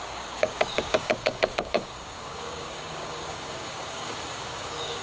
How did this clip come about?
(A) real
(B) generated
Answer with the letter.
B